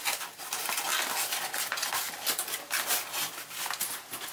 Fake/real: real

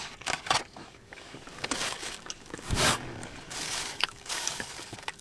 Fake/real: fake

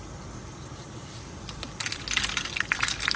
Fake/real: fake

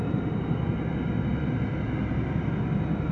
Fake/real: real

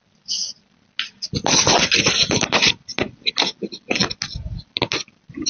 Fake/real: real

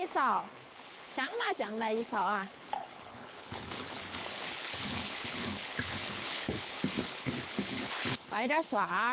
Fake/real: fake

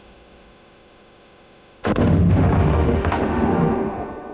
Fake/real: fake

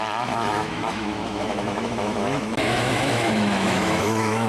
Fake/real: fake